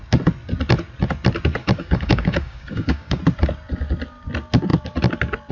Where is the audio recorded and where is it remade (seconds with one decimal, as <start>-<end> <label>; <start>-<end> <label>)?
0.0-1.6 recorded; 1.6-3.2 remade; 3.2-5.5 recorded